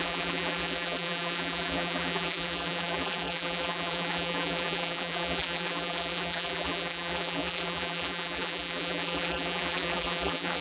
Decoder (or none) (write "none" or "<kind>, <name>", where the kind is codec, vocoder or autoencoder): vocoder, BigVGAN v2